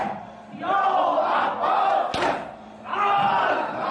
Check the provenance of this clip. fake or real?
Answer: real